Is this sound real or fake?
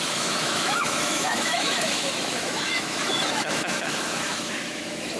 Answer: fake